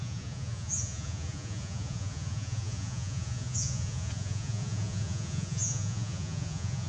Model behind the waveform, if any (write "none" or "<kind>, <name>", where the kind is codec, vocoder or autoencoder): vocoder, Vocos